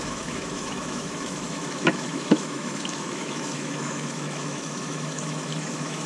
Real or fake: fake